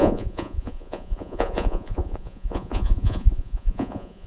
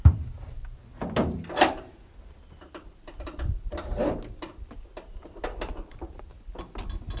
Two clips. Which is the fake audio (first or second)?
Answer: first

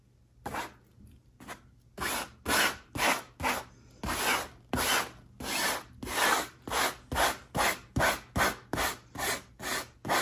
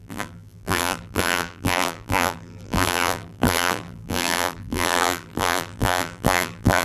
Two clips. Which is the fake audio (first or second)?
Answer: second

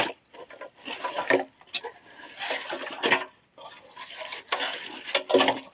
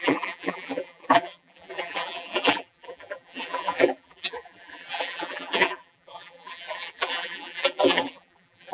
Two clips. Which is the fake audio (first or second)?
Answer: second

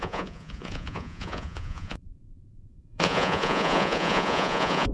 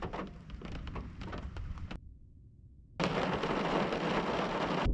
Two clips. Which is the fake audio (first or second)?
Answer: first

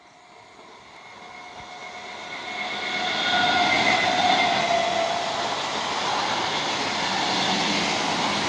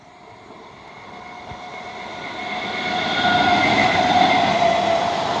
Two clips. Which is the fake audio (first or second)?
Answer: second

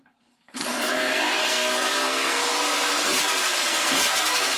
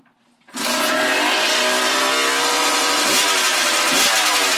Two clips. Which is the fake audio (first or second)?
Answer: first